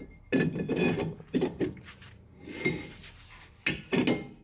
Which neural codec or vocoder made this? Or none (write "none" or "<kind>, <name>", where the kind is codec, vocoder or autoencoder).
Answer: none